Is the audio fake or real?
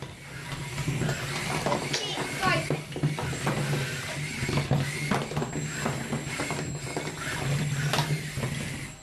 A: real